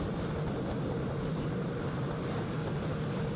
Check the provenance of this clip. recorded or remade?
recorded